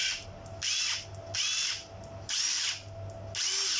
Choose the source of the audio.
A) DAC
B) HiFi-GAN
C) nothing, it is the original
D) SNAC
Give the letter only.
C